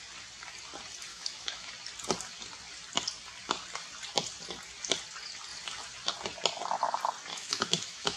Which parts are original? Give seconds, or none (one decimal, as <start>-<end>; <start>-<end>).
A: 0.0-1.1; 1.7-7.3